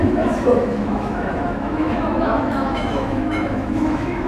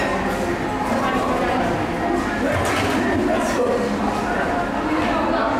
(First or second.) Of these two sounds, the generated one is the first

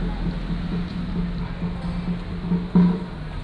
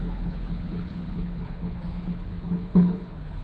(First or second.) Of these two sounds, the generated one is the second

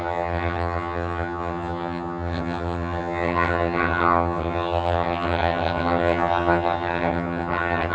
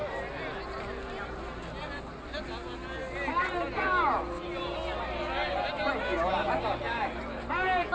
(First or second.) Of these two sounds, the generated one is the first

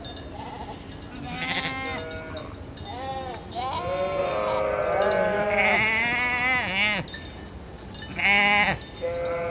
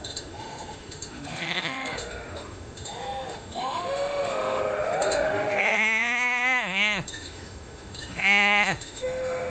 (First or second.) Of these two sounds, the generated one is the second